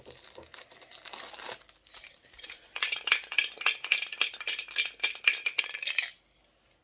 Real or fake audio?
real